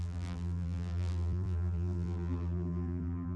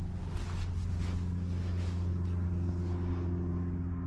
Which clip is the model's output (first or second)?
first